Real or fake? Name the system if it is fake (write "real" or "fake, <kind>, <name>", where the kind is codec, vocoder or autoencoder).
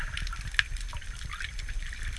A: real